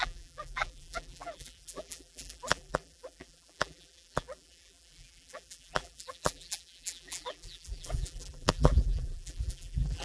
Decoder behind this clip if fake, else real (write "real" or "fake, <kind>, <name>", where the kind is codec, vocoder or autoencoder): fake, vocoder, BigVGAN v2